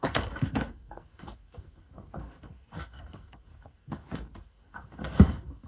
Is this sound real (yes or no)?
no